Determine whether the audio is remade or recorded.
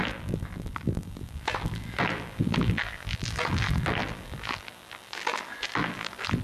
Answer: remade